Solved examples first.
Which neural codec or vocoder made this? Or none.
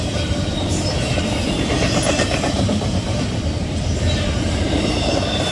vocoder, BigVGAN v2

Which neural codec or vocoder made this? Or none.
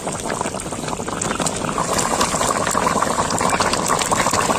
none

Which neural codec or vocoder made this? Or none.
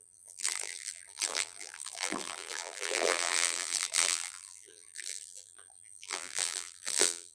vocoder, BigVGAN v2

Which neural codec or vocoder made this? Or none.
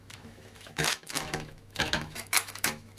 autoencoder, DAC-VAE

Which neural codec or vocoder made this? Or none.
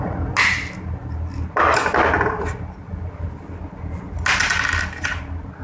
none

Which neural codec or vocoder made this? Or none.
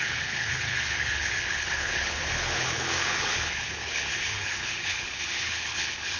codec, HILCodec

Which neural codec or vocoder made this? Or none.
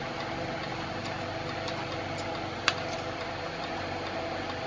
none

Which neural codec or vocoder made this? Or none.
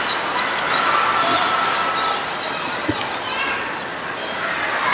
none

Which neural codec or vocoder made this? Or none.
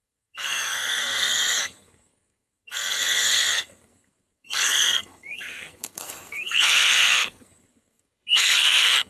codec, SNAC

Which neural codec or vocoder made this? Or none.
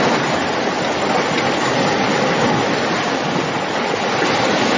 none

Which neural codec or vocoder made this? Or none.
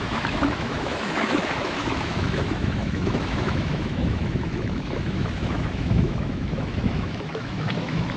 autoencoder, DAC-VAE